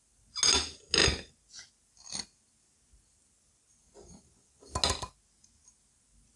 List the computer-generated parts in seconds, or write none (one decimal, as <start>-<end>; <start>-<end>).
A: none

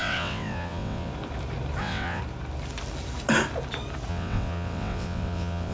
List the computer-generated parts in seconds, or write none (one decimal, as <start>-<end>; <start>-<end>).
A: 0.0-1.1; 1.8-2.2; 4.1-5.7

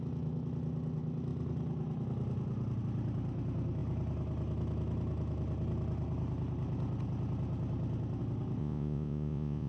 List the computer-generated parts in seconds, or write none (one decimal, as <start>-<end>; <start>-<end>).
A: 8.6-9.7